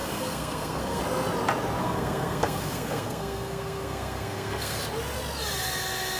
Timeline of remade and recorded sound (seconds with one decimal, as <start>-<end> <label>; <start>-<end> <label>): 0.0-1.0 remade; 1.0-1.8 recorded; 1.8-4.8 remade; 4.8-6.2 recorded